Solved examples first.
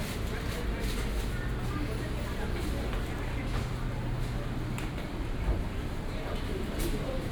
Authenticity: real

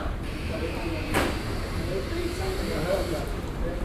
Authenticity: fake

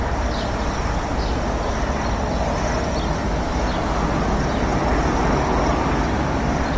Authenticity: real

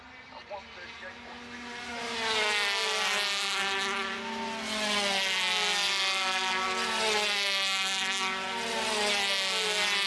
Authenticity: real